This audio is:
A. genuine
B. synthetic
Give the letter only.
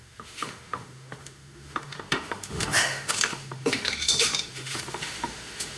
B